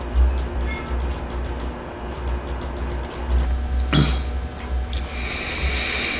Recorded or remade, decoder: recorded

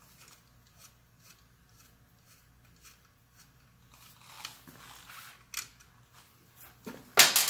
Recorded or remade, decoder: recorded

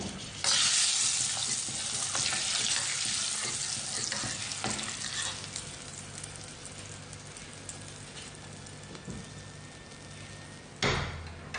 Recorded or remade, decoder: recorded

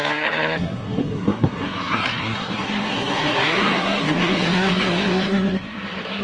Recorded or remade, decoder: remade, codec, SNAC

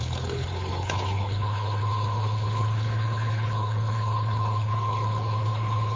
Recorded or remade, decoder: remade, codec, HILCodec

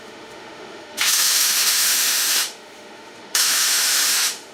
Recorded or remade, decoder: remade, autoencoder, DAC-VAE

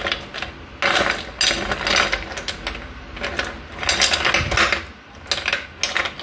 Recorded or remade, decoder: recorded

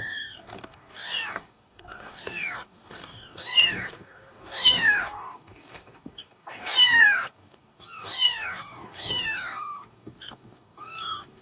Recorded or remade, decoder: remade, codec, DAC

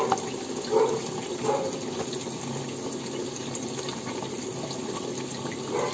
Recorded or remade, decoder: recorded